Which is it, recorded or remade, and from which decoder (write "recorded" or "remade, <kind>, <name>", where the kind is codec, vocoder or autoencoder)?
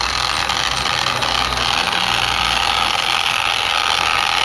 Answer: recorded